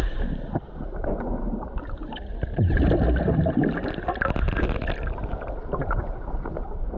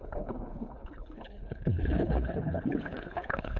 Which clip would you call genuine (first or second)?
first